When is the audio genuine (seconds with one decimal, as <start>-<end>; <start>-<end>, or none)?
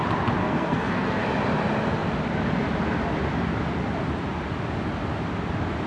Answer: 0.0-0.4; 1.2-5.9